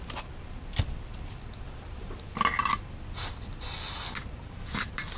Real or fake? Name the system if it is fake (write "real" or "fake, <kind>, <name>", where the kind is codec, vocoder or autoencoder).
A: real